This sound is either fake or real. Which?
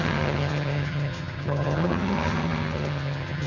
fake